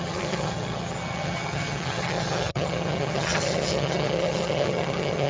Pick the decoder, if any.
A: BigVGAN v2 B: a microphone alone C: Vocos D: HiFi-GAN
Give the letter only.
D